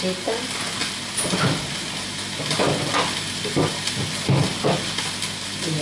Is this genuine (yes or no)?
yes